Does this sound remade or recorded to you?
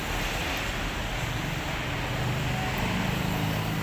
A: recorded